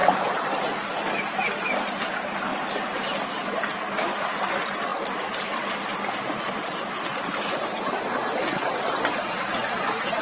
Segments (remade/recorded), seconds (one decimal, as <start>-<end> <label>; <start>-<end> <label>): 0.0-10.2 recorded